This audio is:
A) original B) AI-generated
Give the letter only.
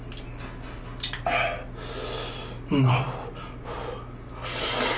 A